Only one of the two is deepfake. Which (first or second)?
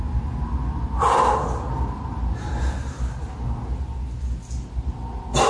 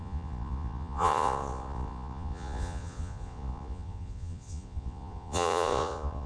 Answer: second